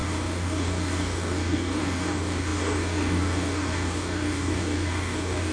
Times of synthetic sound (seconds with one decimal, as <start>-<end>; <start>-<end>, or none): 0.0-5.5